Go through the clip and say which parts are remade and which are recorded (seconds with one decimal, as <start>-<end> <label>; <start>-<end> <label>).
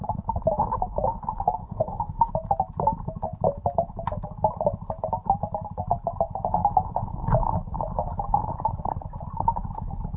0.0-1.6 recorded; 1.6-2.3 remade; 2.3-10.2 recorded